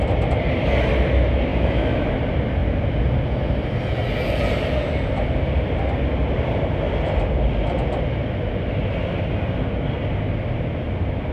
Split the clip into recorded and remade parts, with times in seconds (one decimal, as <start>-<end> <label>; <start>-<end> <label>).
0.0-1.5 recorded; 1.5-2.2 remade; 2.2-11.3 recorded